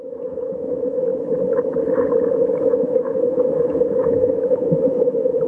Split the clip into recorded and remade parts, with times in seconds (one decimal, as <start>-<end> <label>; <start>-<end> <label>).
0.0-1.1 remade; 1.1-2.2 recorded; 2.2-5.5 remade

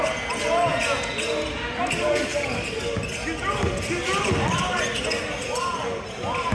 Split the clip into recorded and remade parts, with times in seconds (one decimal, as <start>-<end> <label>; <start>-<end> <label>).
0.0-6.5 recorded

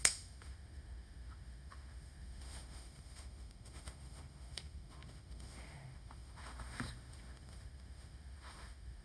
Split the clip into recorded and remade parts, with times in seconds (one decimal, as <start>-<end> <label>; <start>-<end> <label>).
0.0-9.0 remade

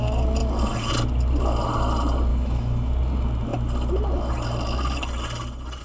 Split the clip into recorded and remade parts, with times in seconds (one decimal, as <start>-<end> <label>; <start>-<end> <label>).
0.0-2.3 recorded; 2.3-2.9 remade; 2.9-5.8 recorded